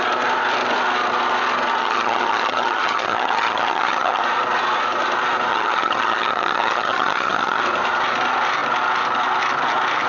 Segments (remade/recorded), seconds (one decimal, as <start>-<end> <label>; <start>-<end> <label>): 0.0-1.8 recorded; 1.8-4.2 remade; 4.2-5.5 recorded; 5.5-7.6 remade; 7.6-10.1 recorded